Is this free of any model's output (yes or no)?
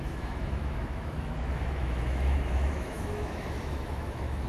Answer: no